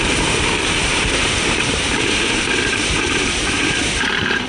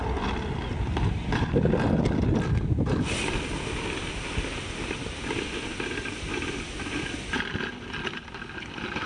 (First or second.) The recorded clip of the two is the second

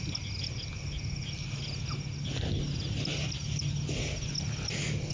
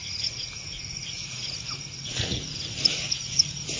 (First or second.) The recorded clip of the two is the first